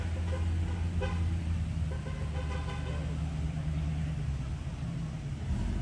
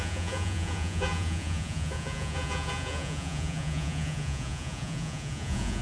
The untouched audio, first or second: first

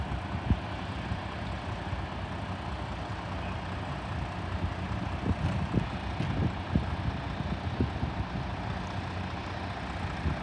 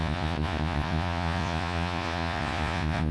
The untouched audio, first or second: first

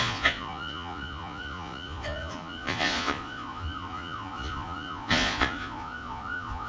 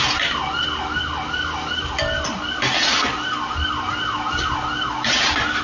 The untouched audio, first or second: second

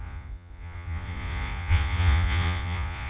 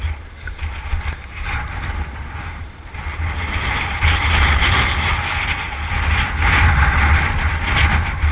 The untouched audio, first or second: second